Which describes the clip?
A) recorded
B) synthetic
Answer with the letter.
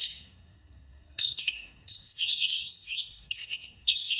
B